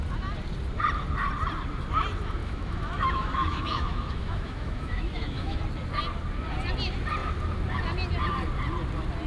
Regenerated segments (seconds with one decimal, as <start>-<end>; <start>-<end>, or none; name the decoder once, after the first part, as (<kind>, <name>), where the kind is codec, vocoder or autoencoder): 2.4-5.6 (autoencoder, DAC-VAE)